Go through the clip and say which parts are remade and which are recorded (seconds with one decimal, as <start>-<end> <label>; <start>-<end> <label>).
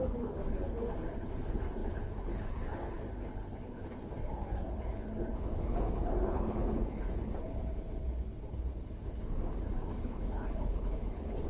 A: 0.0-11.5 remade